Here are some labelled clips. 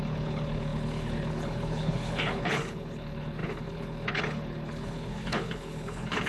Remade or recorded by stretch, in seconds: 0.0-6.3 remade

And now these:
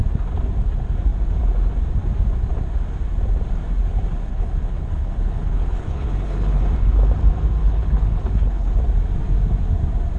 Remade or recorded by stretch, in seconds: 0.0-4.3 recorded; 4.3-6.6 remade; 6.6-7.6 recorded; 7.6-8.8 remade; 8.8-10.2 recorded

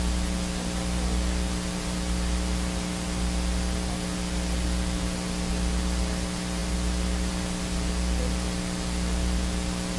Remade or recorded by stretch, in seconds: 0.0-10.0 recorded

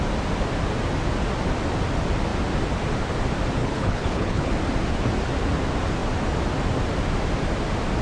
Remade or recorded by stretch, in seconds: 0.0-3.6 recorded; 3.6-4.5 remade; 4.5-8.0 recorded

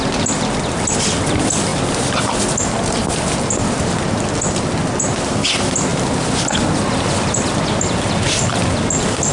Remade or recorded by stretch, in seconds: 0.0-9.3 recorded